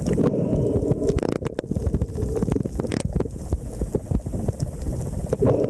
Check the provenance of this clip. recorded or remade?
recorded